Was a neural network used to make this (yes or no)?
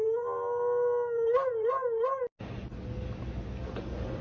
no